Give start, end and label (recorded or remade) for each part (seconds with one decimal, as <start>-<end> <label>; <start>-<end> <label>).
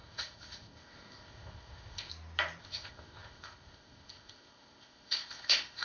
0.0-2.1 remade; 2.1-2.6 recorded; 2.6-5.8 remade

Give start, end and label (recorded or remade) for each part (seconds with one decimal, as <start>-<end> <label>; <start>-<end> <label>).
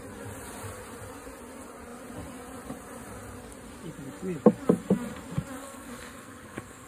0.0-5.6 recorded; 5.6-6.9 remade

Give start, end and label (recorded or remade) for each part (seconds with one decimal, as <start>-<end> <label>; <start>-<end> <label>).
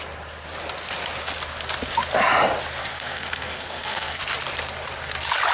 0.0-2.8 recorded; 2.8-4.2 remade; 4.2-5.5 recorded